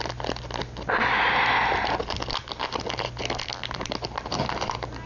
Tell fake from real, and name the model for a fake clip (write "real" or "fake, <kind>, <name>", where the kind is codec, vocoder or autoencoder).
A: real